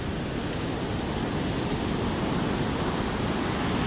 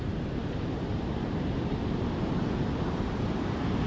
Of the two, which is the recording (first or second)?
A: first